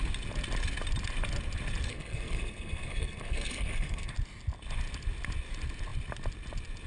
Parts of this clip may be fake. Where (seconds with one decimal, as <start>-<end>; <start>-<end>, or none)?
1.9-4.1